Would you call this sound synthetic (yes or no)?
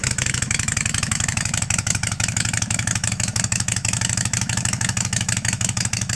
yes